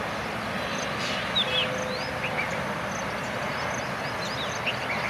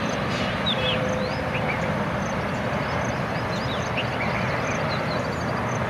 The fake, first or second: second